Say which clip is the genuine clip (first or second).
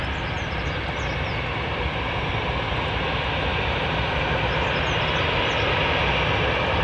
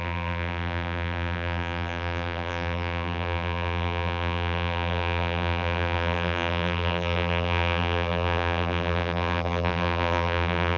first